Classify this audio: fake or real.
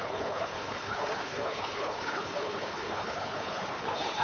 fake